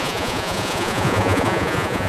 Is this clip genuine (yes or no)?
no